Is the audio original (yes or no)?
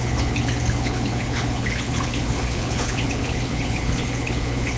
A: no